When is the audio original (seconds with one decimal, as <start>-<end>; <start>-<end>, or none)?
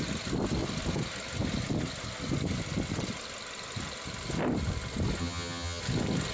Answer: 0.0-5.2; 5.8-6.3